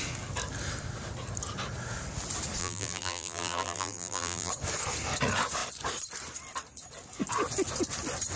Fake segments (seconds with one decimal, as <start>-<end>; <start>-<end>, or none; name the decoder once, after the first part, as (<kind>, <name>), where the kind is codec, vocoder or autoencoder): 2.6-4.5 (vocoder, BigVGAN v2)